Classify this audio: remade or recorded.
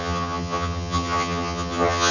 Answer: remade